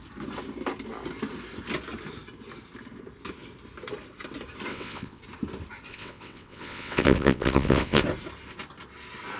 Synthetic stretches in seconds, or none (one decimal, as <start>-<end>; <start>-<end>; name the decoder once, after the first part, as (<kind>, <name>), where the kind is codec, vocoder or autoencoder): 4.7-5.2 (vocoder, WaveNeXt); 5.9-8.0